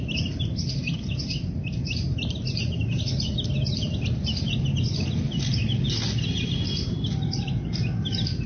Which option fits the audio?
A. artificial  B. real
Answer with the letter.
B